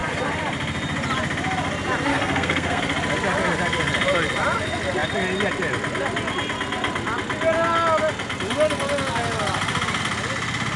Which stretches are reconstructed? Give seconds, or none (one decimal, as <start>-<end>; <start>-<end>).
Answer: 2.1-2.8